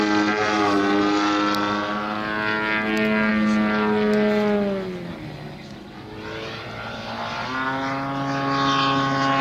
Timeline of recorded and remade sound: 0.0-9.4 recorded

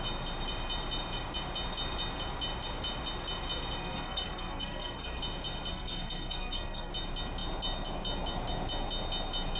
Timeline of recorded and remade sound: 0.0-3.8 recorded; 3.8-5.2 remade; 5.2-5.7 recorded; 5.7-6.9 remade; 6.9-9.6 recorded

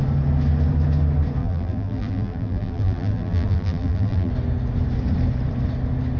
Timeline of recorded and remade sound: 0.0-1.4 recorded; 1.4-4.3 remade; 4.3-6.2 recorded

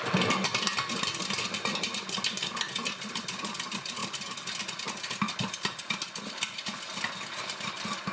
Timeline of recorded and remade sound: 0.0-8.1 recorded

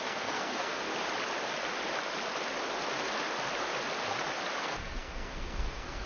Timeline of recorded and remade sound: 0.0-0.9 remade; 0.9-4.6 recorded; 4.6-6.1 remade

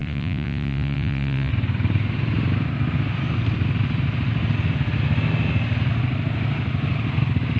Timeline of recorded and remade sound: 0.0-1.5 remade; 1.5-7.6 recorded

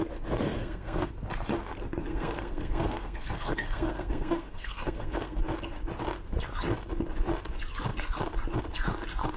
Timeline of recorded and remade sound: 0.0-0.6 recorded; 0.6-1.1 remade; 1.1-2.1 recorded; 2.1-5.4 remade; 5.4-9.4 recorded

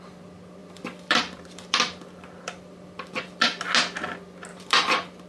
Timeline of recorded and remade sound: 0.0-0.6 recorded; 0.6-3.6 remade; 3.6-4.5 recorded; 4.5-5.3 remade